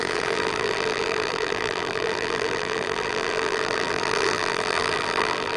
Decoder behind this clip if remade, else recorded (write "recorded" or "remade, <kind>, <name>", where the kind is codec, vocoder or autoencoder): remade, vocoder, BigVGAN v2